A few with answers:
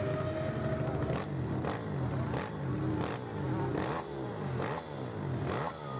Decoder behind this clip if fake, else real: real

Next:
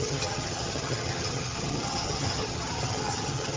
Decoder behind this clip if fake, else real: fake, vocoder, HiFi-GAN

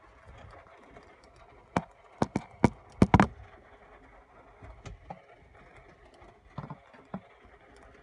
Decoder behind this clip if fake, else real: real